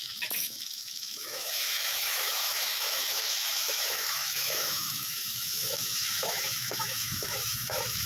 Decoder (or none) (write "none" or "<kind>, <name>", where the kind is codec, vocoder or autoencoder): autoencoder, DAC-VAE